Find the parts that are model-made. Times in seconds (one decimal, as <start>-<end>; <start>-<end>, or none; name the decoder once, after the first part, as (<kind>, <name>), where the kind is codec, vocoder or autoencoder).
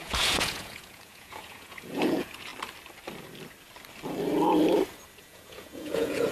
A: 0.0-2.5 (vocoder, Vocos); 5.2-6.3